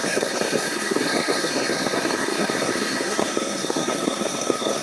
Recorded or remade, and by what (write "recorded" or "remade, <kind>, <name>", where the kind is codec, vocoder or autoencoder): remade, codec, SNAC